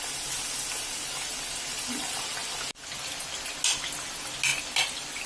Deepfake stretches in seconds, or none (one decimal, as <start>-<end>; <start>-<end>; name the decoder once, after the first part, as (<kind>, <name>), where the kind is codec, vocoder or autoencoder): none